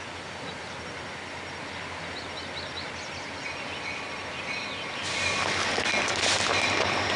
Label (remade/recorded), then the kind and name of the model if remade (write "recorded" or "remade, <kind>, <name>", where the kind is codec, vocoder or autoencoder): recorded